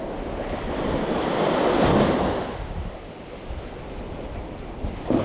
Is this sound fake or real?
real